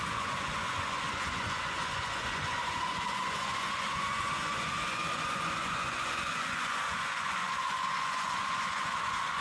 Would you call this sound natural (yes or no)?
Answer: no